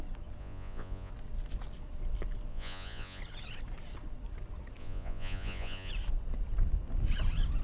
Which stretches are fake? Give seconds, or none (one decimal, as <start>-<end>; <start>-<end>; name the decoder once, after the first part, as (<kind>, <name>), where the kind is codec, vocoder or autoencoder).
0.4-1.1 (vocoder, Vocos); 2.5-3.2; 4.8-5.9